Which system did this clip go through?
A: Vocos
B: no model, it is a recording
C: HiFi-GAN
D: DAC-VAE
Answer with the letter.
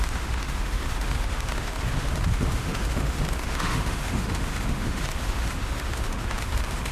D